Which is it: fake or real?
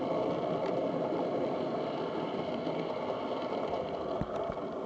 real